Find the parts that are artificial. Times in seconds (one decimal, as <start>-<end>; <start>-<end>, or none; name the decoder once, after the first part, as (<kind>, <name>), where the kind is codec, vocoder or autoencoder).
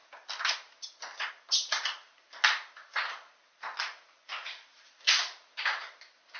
none